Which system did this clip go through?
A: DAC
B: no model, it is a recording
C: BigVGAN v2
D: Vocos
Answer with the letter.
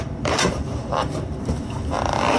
C